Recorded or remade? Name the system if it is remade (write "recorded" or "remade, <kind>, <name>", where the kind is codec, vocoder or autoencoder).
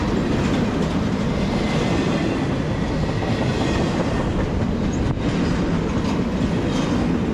recorded